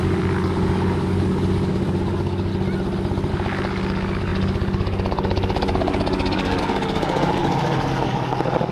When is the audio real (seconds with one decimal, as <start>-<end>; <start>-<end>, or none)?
2.5-3.3